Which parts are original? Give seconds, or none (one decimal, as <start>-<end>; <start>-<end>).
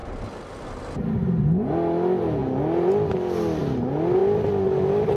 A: 0.0-5.2